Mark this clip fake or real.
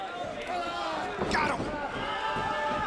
real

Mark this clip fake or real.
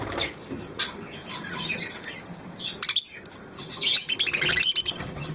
real